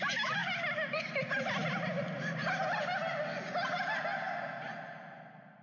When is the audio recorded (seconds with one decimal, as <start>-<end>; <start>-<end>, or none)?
0.0-5.6